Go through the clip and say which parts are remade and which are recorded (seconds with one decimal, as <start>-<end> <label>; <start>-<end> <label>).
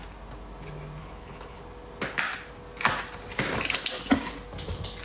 0.0-1.0 recorded; 1.0-1.6 remade; 1.6-5.0 recorded